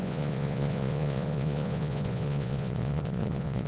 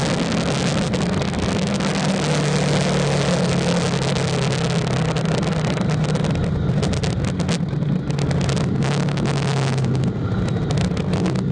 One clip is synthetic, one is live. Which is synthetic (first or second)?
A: first